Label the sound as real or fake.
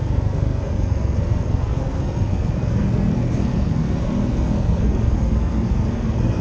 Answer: fake